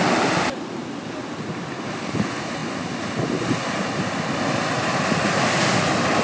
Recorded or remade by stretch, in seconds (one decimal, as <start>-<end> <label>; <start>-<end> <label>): 0.0-6.2 recorded